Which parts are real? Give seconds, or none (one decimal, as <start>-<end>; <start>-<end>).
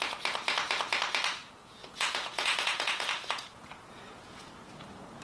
0.0-1.4; 4.5-5.2